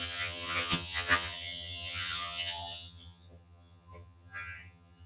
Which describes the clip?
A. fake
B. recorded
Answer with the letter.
A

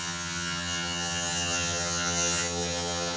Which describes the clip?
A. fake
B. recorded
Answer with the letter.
A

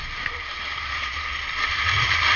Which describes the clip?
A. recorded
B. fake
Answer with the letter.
A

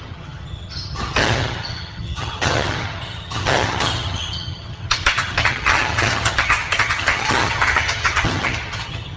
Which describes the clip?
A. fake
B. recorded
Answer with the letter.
A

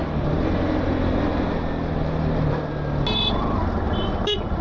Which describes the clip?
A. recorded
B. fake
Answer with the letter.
A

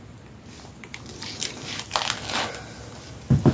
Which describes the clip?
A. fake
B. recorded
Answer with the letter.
B